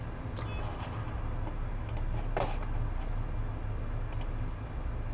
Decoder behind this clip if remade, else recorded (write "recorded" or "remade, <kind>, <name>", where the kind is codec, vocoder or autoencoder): recorded